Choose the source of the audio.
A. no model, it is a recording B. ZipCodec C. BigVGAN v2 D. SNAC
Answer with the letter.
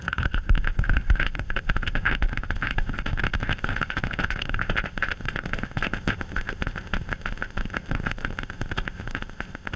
B